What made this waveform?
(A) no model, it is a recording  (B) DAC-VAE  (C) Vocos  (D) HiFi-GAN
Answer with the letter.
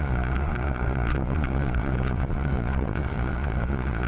C